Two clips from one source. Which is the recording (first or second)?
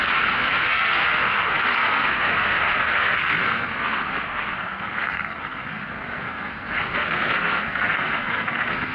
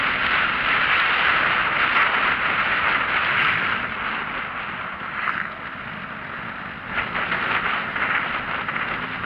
second